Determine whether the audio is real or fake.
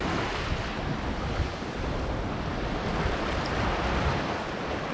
real